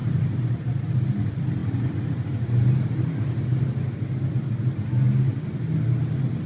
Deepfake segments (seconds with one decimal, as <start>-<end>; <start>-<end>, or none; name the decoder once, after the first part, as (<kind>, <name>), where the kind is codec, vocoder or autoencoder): 0.0-0.7 (vocoder, BigVGAN v2); 1.6-3.6